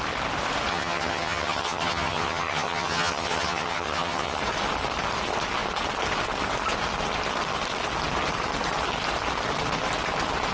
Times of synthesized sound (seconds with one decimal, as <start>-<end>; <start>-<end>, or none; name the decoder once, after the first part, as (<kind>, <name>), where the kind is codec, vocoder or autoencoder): 0.7-4.4 (vocoder, HiFi-GAN)